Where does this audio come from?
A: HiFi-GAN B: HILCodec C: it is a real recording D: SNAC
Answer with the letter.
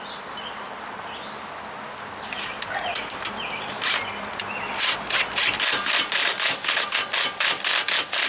C